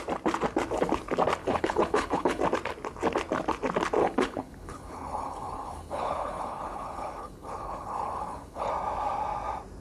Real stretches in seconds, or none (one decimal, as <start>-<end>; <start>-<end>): 0.0-1.4; 2.4-4.0; 8.7-9.8